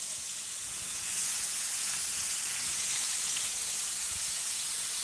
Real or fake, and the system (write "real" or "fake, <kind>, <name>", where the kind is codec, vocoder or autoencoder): fake, vocoder, Vocos